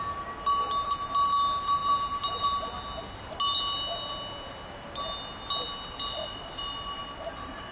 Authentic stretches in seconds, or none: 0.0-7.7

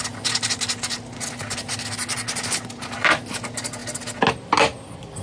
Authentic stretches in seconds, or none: 0.0-5.2

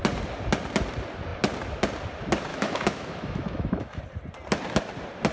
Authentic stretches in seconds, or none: 0.0-2.5; 4.0-5.3

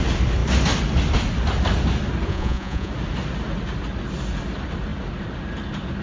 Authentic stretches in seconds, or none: 0.0-2.3; 2.9-6.0

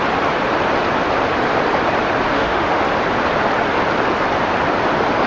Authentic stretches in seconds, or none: 0.0-2.3; 2.8-5.3

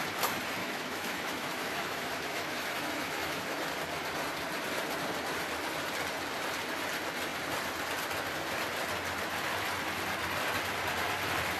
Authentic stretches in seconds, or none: 0.0-0.6; 3.7-11.6

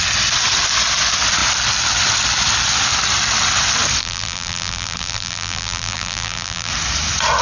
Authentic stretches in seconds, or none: 0.0-4.0; 6.7-7.4